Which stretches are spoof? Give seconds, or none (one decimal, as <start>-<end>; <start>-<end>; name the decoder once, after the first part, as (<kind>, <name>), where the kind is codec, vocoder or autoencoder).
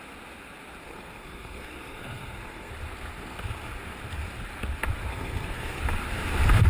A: 0.8-2.7 (codec, SNAC); 5.1-5.8